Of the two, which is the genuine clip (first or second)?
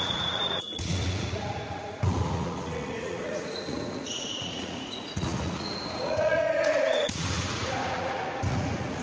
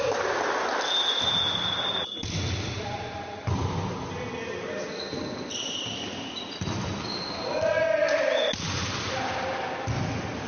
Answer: second